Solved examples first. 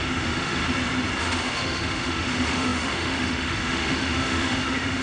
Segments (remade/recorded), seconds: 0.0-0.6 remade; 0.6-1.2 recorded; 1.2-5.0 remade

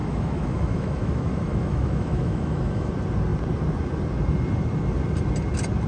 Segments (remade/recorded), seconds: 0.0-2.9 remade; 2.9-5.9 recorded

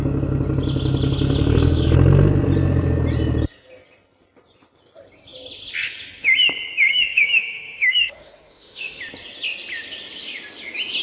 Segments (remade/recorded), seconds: 0.0-6.9 recorded; 6.9-9.0 remade; 9.0-11.0 recorded

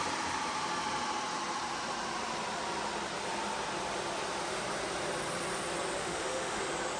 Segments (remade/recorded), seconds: 0.0-6.0 recorded; 6.0-6.6 remade; 6.6-7.0 recorded

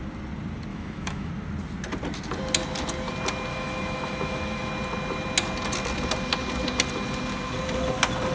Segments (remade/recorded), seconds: 0.0-0.7 recorded; 0.7-1.3 remade; 1.3-3.5 recorded; 3.5-4.7 remade; 4.7-8.3 recorded

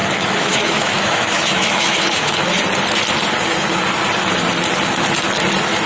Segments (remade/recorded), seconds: 0.0-2.5 remade; 2.5-5.9 recorded

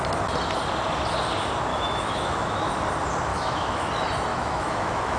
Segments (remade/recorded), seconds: 0.0-1.7 recorded; 1.7-2.7 remade; 2.7-3.3 recorded; 3.3-3.9 remade; 3.9-4.3 recorded; 4.3-5.2 remade